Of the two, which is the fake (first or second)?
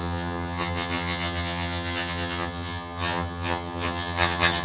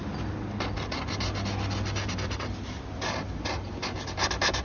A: first